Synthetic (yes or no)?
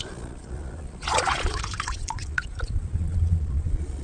yes